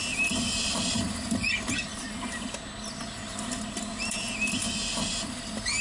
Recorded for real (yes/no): yes